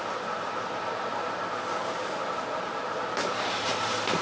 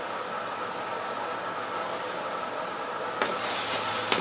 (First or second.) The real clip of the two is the second